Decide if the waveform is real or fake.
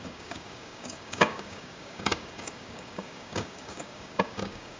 fake